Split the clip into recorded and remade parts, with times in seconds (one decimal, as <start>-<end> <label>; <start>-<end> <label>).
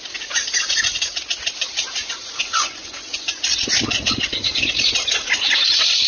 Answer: 0.0-2.2 recorded; 2.2-3.3 remade; 3.3-6.1 recorded